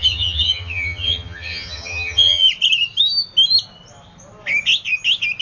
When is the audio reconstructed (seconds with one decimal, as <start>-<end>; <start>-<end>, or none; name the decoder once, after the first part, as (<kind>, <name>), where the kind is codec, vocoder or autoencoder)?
0.0-2.5 (vocoder, HiFi-GAN)